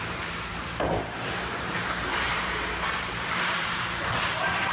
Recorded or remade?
remade